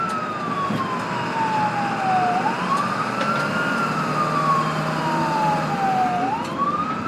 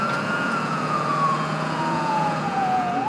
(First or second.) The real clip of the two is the first